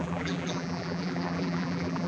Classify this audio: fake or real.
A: fake